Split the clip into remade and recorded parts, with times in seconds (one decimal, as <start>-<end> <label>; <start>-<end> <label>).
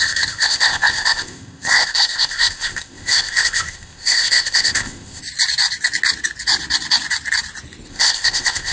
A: 0.0-5.2 remade; 5.2-7.9 recorded; 7.9-8.7 remade